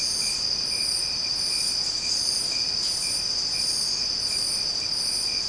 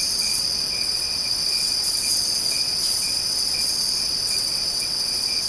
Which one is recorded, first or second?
first